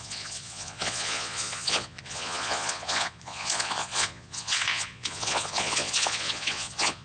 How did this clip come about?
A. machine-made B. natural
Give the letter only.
A